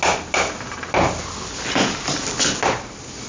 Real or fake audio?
real